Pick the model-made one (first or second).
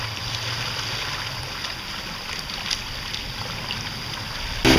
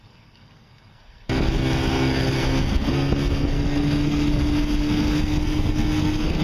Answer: second